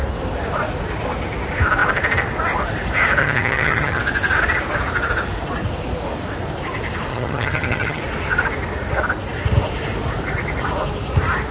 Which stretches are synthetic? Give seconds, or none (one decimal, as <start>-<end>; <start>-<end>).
3.2-4.0; 7.1-8.0